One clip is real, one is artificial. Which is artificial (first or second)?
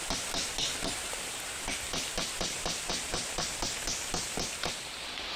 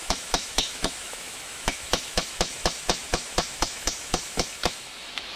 second